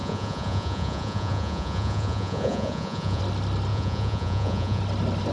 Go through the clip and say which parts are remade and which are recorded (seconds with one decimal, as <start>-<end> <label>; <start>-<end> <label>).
0.0-3.2 remade; 3.2-3.7 recorded; 3.7-4.8 remade; 4.8-5.3 recorded